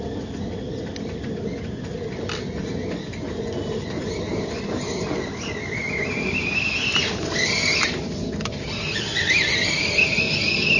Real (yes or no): yes